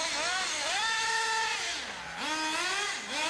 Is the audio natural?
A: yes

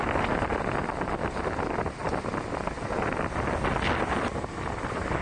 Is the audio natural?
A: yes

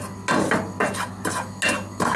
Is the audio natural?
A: yes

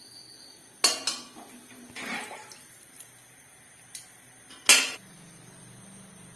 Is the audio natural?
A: yes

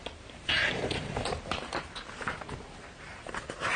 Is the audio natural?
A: no